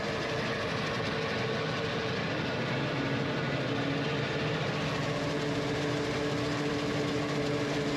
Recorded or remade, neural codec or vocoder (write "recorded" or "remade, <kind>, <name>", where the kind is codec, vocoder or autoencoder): recorded